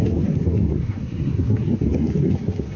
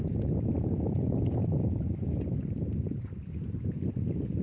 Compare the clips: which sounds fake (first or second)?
first